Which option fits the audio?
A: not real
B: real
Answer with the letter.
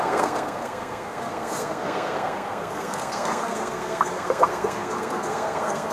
A